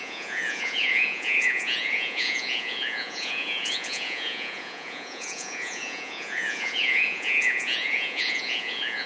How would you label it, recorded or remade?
remade